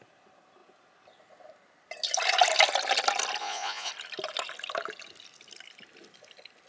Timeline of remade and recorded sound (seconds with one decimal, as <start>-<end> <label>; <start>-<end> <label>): 0.0-3.4 recorded; 3.4-3.9 remade; 3.9-6.7 recorded